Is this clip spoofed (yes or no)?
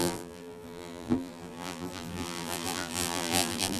yes